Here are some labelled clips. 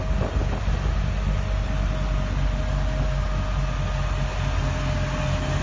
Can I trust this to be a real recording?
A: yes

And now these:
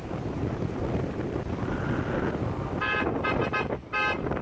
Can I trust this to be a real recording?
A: yes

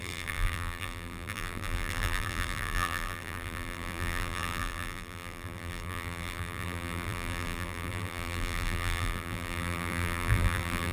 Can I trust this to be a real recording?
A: no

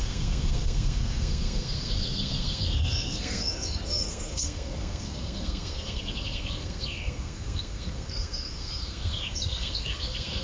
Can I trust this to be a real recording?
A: no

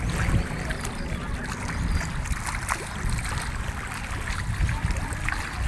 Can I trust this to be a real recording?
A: yes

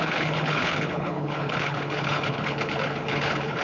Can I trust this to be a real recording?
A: no